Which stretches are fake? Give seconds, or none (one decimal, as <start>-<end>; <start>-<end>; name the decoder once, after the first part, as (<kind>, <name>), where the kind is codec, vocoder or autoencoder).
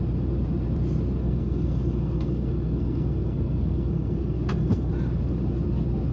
1.2-4.9 (codec, SNAC)